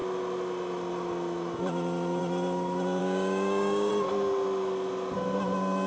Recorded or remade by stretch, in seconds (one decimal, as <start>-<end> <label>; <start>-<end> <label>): 0.0-3.0 recorded; 3.0-3.9 remade; 3.9-5.9 recorded